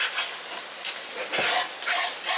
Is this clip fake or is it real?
real